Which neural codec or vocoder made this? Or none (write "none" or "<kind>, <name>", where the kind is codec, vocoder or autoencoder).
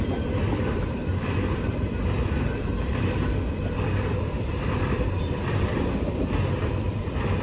vocoder, BigVGAN v2